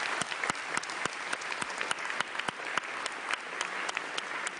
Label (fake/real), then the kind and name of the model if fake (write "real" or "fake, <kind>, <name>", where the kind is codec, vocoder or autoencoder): real